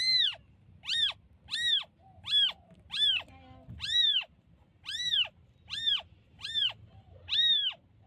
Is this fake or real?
real